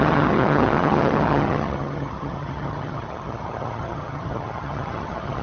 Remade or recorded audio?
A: remade